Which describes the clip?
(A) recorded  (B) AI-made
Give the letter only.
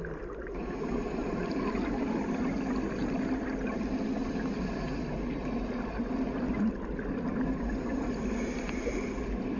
A